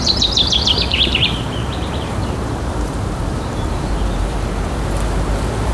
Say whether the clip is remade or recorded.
remade